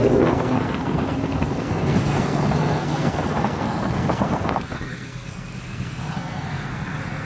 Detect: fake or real fake